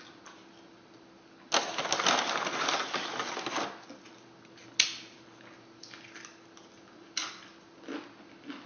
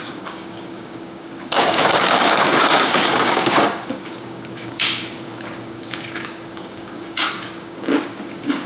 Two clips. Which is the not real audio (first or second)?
second